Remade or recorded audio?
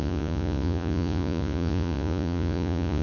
remade